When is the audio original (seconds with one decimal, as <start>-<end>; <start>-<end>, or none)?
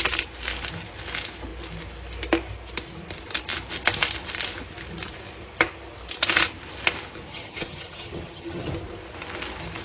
0.0-7.3; 8.7-9.8